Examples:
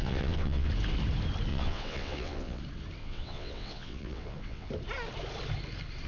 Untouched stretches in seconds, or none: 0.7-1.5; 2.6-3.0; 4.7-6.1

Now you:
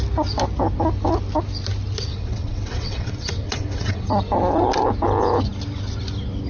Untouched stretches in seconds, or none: 0.0-2.1; 4.1-6.5

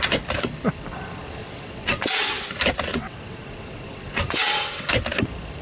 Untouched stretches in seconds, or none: 0.0-1.4; 2.4-2.9; 4.9-5.6

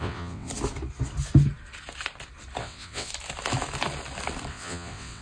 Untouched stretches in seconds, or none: 0.5-2.6; 3.1-4.5

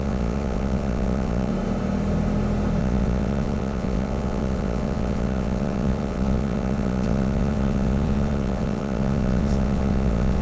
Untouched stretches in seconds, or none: 1.5-2.8

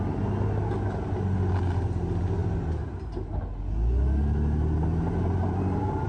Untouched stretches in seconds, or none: 0.0-6.1

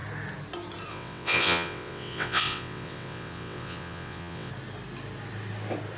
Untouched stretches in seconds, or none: 0.0-0.9; 4.5-6.0